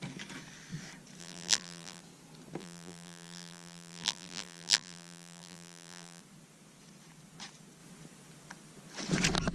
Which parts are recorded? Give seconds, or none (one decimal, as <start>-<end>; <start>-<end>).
0.0-1.2; 2.0-2.6; 6.2-9.5